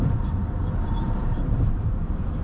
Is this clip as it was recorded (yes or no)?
no